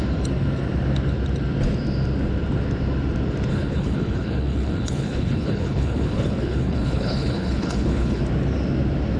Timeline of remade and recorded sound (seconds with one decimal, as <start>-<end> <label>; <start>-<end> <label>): 0.0-3.5 recorded; 3.5-8.2 remade; 8.2-9.2 recorded